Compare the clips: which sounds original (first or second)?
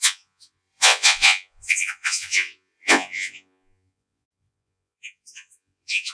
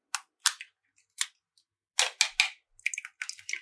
second